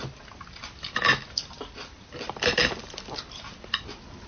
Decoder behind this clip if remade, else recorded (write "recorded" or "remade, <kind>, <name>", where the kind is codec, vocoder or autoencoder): recorded